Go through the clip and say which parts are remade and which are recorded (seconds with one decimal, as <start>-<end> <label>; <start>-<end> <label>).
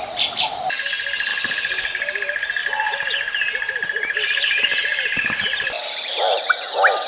0.0-1.3 recorded; 1.3-1.9 remade; 1.9-2.6 recorded; 2.6-6.4 remade; 6.4-7.1 recorded